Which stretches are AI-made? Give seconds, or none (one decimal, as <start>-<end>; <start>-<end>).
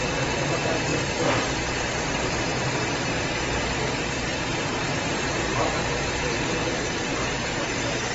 0.0-8.1